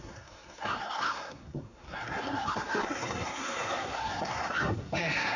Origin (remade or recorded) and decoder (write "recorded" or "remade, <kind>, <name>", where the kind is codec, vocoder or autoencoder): remade, codec, SNAC